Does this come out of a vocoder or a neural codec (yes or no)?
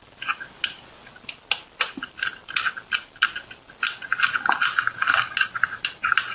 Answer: no